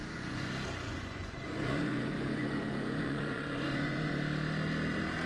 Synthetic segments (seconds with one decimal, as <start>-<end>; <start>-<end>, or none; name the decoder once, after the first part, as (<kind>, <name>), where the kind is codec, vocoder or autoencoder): 0.0-0.5 (vocoder, Vocos); 0.9-4.1